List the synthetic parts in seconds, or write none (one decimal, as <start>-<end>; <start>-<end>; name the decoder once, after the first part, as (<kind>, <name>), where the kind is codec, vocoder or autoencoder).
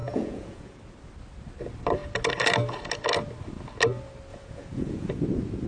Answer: 0.0-0.8 (vocoder, Vocos); 4.3-5.1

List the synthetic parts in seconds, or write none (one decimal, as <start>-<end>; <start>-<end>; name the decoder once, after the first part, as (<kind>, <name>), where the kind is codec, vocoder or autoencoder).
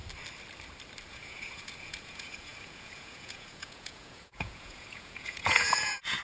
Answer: 1.1-6.2 (vocoder, Vocos)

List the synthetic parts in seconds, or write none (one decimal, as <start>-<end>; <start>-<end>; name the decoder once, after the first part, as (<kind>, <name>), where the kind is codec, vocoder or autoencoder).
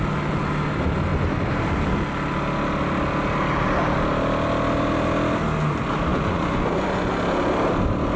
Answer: 6.1-7.1 (vocoder, Vocos)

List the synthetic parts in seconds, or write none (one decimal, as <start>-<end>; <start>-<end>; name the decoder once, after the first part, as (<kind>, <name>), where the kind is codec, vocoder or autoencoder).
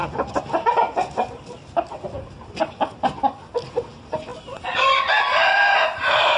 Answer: none